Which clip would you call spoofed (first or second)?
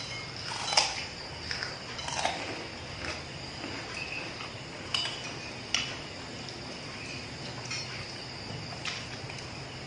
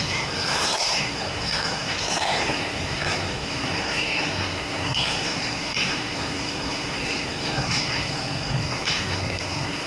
second